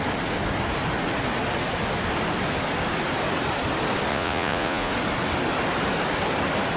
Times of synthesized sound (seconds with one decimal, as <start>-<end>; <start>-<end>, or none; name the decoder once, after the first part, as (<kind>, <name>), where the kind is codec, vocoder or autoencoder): 4.1-4.9 (vocoder, Vocos)

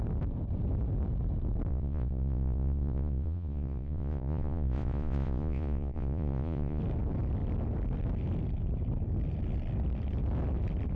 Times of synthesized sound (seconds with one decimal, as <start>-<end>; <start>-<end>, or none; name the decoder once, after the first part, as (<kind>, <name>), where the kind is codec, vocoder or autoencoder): 1.7-6.8 (vocoder, Vocos)

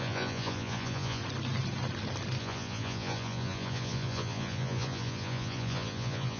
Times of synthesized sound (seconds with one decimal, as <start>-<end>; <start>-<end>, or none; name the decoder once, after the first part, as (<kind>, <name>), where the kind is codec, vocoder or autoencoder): 0.0-1.2 (vocoder, Vocos); 2.4-6.4

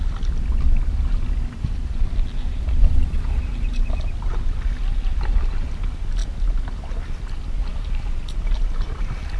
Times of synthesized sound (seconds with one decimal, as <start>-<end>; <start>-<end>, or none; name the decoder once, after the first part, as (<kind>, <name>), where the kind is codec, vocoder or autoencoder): 2.8-3.4 (vocoder, Vocos)

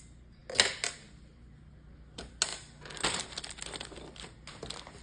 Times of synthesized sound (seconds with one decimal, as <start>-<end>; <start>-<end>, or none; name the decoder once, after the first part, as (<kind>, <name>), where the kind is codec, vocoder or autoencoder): none

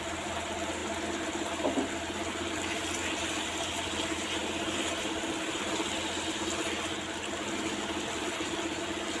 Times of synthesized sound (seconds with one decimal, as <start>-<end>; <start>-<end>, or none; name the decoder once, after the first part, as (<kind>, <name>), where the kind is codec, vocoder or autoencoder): none